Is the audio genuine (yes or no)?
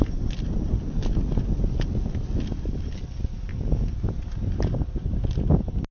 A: yes